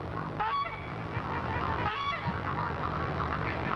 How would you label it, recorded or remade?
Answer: remade